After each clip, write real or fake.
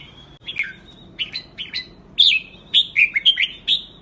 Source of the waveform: real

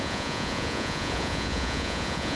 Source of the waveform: fake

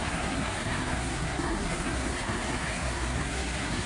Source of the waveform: fake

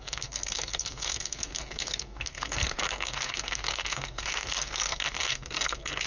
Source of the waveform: fake